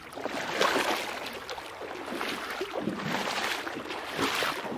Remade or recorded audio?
recorded